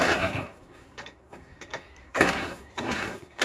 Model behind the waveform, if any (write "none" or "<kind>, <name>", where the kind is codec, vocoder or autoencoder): codec, SNAC